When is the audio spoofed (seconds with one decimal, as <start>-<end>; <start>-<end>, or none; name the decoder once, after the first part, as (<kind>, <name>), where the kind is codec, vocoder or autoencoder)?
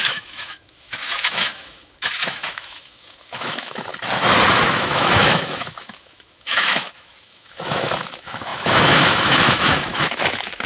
0.0-3.9 (autoencoder, DAC-VAE); 4.5-10.7